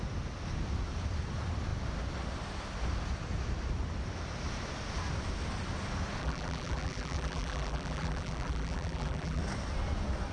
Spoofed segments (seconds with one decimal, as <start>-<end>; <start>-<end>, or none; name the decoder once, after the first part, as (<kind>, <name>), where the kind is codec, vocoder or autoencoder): 6.2-9.4 (vocoder, BigVGAN v2)